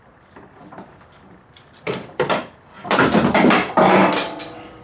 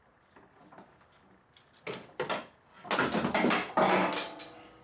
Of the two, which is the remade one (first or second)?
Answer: first